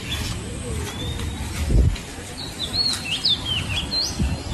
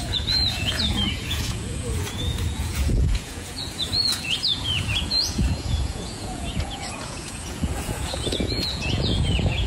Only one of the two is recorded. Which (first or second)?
first